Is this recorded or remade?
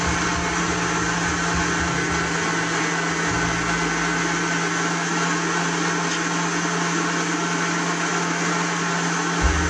recorded